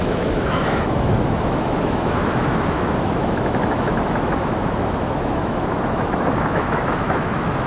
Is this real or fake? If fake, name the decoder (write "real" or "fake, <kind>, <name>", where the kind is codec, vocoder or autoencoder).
fake, autoencoder, DAC-VAE